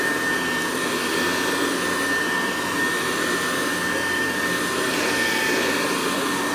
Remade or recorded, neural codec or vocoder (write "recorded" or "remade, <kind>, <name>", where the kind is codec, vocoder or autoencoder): recorded